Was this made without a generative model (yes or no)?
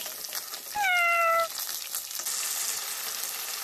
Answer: yes